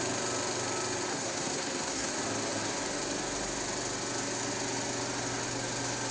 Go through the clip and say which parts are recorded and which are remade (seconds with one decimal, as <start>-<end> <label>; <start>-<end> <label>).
0.0-1.1 recorded; 1.1-2.1 remade; 2.1-6.1 recorded